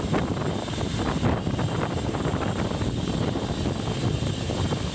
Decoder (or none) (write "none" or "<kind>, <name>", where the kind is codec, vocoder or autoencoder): none